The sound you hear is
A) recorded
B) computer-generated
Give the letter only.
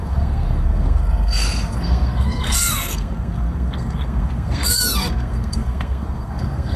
B